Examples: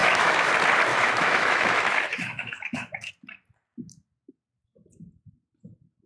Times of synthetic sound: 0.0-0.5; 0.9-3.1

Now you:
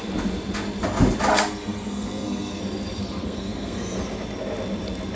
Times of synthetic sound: 1.3-2.6; 3.0-4.0

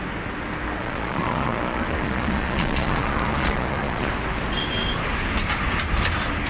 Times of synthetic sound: 0.8-4.1

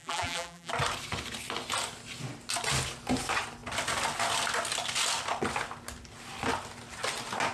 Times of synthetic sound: 0.0-0.7